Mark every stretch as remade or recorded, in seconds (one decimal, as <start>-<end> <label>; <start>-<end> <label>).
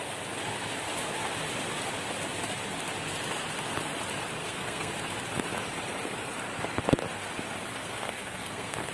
0.0-4.4 recorded; 4.4-4.9 remade; 4.9-7.8 recorded; 7.8-8.9 remade